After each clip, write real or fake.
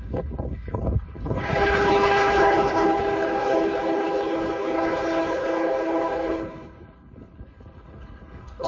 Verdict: fake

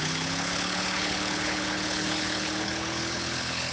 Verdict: fake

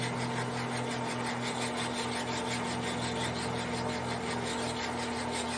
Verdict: real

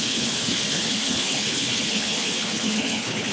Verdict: fake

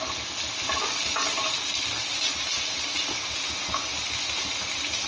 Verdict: real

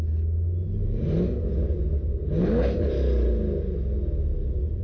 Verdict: real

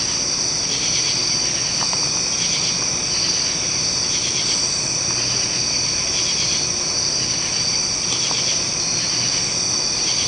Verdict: real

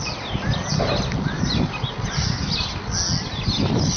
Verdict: real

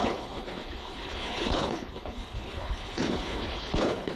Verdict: fake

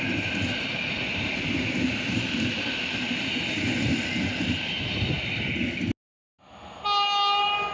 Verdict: real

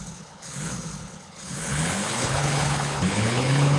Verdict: fake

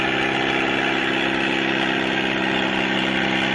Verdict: real